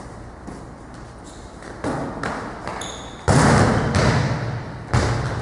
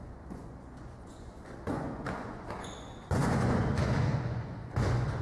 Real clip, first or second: first